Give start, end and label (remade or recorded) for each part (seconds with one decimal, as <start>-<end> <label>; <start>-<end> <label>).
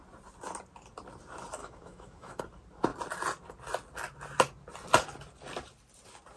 0.0-1.6 recorded; 1.6-2.4 remade; 2.4-6.4 recorded